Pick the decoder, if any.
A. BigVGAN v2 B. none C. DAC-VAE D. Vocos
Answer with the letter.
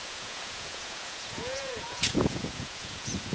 D